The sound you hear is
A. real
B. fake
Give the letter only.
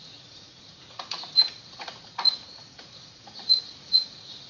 B